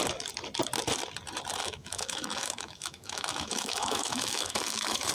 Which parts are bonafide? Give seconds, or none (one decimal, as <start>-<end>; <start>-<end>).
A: 0.0-1.6